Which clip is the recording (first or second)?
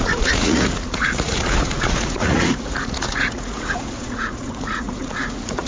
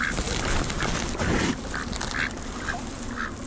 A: second